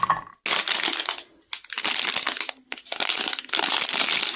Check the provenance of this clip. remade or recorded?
recorded